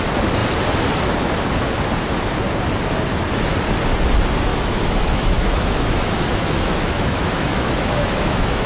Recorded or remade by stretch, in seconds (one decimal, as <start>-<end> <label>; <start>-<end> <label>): 0.0-4.5 recorded; 4.5-8.7 remade